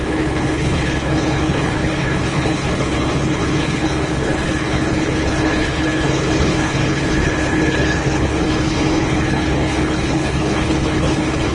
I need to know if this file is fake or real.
fake